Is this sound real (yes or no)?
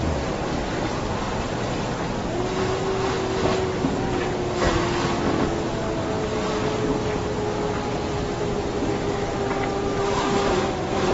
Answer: yes